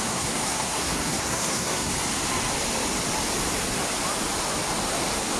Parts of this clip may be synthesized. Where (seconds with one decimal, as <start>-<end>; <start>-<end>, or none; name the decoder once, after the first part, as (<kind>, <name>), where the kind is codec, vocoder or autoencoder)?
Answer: 0.0-1.9 (codec, SNAC)